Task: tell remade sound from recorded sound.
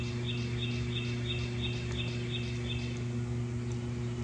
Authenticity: recorded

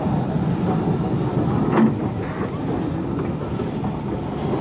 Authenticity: recorded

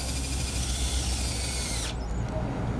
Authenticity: recorded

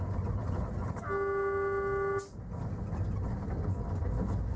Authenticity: recorded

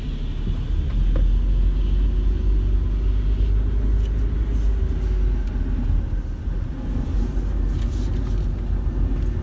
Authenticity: recorded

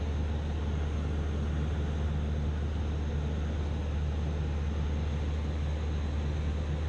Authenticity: recorded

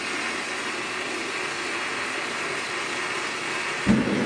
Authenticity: recorded